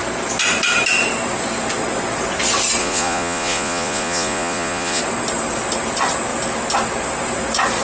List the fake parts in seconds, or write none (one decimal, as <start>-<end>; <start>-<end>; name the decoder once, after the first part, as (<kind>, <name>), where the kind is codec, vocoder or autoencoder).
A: 2.8-5.0 (vocoder, Vocos)

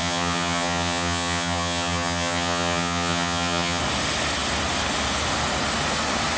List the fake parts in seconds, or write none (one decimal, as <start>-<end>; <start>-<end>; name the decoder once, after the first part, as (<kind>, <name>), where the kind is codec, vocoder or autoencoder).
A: 0.0-3.8 (vocoder, HiFi-GAN)